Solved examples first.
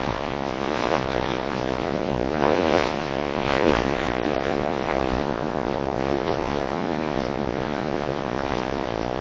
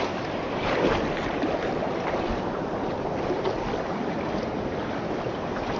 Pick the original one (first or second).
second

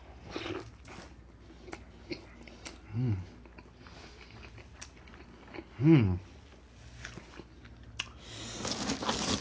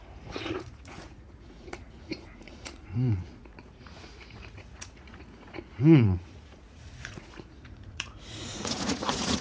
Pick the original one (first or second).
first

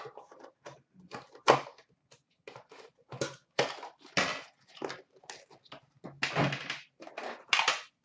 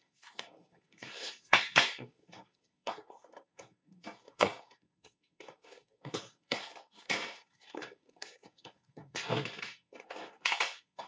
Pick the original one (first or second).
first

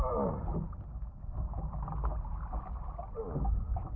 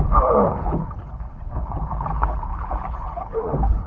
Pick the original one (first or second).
first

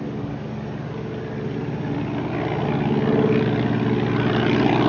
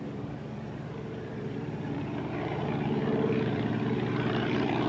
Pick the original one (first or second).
first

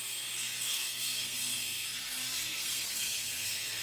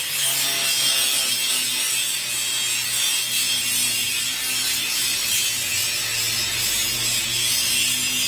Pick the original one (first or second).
second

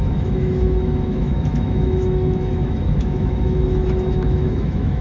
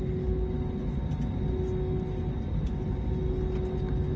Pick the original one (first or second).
second